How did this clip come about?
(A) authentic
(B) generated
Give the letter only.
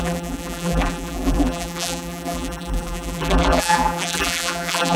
B